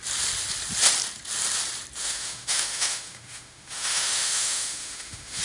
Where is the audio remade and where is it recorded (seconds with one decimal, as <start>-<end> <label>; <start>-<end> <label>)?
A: 0.0-2.0 recorded; 2.0-5.4 remade